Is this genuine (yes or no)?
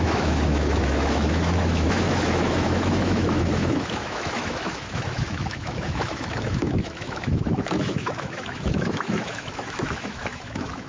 no